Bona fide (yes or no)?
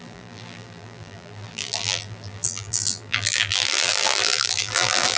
no